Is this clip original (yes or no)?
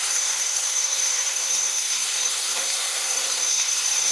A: no